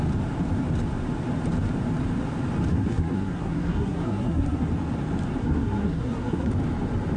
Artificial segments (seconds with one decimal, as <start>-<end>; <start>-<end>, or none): 2.7-4.7; 5.4-6.5